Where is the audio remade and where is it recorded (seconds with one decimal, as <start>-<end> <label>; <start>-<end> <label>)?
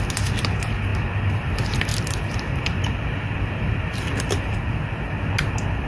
0.0-1.9 recorded; 1.9-4.4 remade; 4.4-5.9 recorded